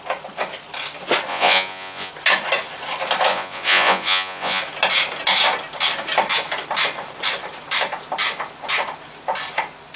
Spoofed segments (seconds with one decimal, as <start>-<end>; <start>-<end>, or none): 1.3-2.1; 3.3-4.6